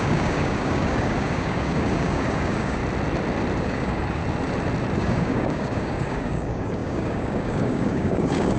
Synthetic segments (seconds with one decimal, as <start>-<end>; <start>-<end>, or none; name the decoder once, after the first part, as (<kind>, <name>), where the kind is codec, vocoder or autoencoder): 0.0-2.8 (codec, DAC); 3.6-4.2; 5.0-8.6